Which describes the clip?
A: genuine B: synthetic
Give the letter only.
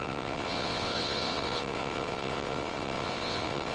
B